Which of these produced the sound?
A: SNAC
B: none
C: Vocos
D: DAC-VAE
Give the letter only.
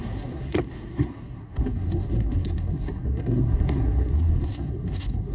A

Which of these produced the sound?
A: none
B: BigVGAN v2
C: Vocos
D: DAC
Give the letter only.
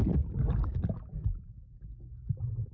A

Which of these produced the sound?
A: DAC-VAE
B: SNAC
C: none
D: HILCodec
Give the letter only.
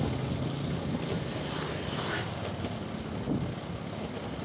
C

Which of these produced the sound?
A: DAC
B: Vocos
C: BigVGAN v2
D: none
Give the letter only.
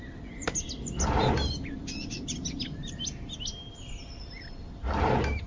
D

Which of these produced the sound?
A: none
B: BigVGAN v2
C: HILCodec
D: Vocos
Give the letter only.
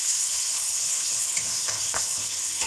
C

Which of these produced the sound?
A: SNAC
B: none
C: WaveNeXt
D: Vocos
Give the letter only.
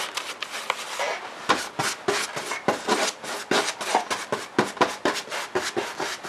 B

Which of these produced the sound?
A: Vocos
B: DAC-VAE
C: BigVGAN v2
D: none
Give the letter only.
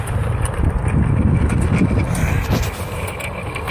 D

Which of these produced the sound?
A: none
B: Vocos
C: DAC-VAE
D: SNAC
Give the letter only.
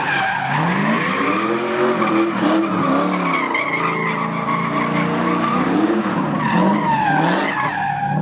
A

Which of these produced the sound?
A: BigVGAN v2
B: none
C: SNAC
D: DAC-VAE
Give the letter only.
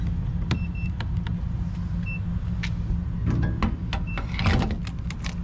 B